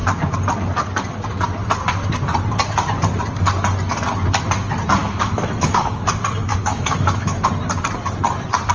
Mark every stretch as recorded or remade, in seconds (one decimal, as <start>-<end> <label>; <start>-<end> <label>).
0.0-5.0 recorded; 5.0-6.0 remade; 6.0-6.5 recorded; 6.5-7.5 remade; 7.5-8.7 recorded